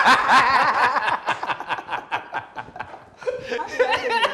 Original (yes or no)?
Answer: yes